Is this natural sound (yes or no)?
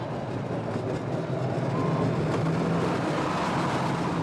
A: yes